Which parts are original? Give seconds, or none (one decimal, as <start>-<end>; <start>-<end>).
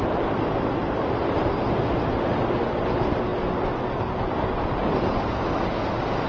0.0-6.3